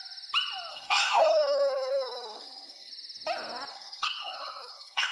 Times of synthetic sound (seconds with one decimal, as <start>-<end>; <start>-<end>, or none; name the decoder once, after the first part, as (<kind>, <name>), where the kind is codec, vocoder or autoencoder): 0.7-2.9 (codec, SNAC); 3.7-5.1